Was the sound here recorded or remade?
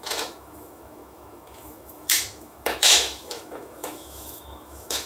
remade